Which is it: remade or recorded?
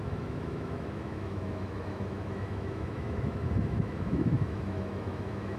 remade